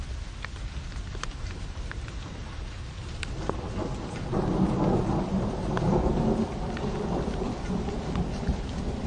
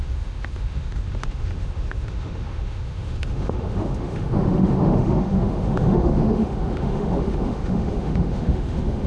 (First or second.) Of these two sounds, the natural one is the first